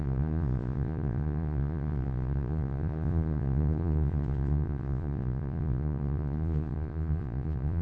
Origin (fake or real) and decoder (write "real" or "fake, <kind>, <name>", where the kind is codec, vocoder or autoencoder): fake, vocoder, Vocos